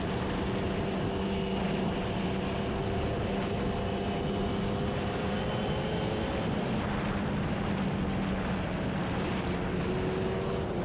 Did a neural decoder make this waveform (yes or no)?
no